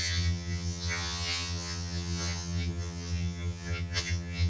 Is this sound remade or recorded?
remade